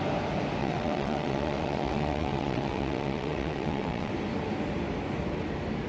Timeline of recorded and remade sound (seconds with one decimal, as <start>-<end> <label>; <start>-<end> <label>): 0.0-0.6 recorded; 0.6-4.1 remade; 4.1-5.9 recorded